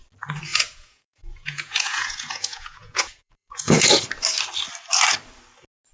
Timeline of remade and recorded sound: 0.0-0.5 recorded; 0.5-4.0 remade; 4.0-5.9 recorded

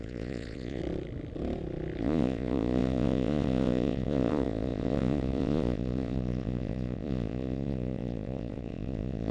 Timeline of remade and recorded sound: 0.0-0.8 remade; 0.8-2.0 recorded; 2.0-9.3 remade

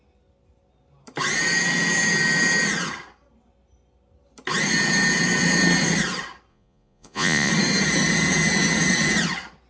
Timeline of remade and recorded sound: 0.0-6.5 recorded; 6.5-7.5 remade; 7.5-9.7 recorded

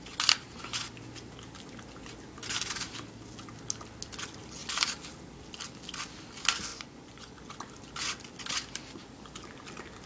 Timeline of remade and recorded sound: 0.0-6.7 recorded; 6.7-7.4 remade; 7.4-10.1 recorded

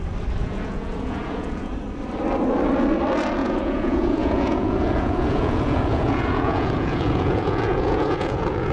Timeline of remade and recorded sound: 0.0-0.4 recorded; 0.4-1.7 remade; 1.7-3.4 recorded; 3.4-8.7 remade